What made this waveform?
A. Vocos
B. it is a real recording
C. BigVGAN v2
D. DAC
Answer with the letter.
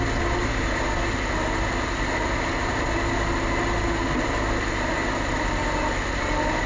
B